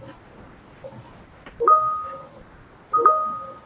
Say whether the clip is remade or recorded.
recorded